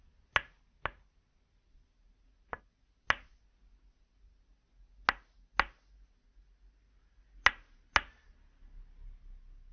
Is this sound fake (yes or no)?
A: no